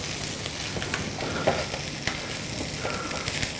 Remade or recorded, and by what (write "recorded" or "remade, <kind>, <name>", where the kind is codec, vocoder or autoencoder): recorded